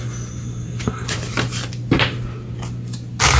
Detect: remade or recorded recorded